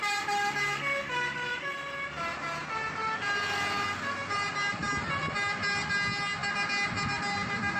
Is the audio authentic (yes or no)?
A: yes